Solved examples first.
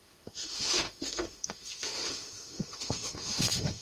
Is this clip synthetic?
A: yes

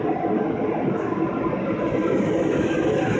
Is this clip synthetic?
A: yes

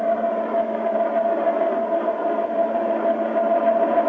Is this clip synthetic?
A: no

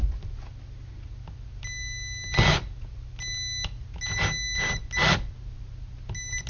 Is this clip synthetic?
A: no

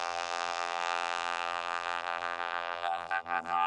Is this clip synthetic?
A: yes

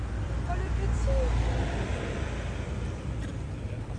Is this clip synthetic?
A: yes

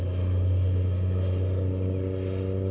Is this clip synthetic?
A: no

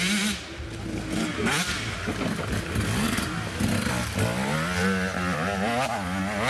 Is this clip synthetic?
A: no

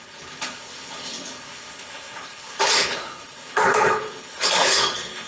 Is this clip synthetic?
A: yes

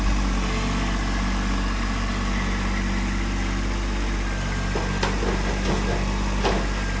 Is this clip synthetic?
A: no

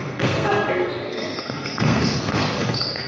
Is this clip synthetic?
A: yes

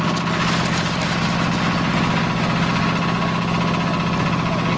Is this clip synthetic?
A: no